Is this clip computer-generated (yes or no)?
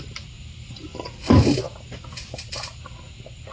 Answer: no